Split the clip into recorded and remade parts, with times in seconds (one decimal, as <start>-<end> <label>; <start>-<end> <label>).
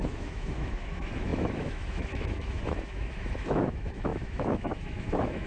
0.0-5.5 remade